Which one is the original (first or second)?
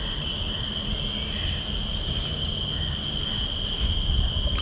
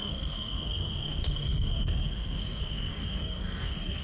first